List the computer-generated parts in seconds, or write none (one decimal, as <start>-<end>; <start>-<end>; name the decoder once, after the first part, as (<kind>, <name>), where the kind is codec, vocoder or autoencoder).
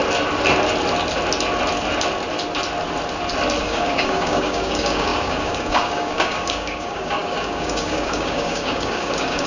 3.6-9.5 (codec, DAC)